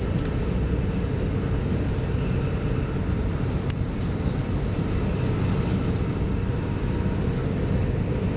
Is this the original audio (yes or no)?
yes